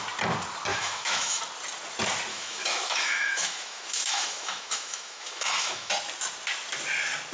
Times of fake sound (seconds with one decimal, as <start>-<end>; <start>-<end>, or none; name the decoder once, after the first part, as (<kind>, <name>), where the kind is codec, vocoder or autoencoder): 0.7-1.4 (autoencoder, DAC-VAE); 2.3-5.9